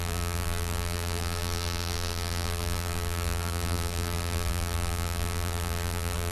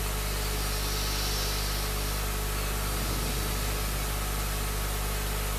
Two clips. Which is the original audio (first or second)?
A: second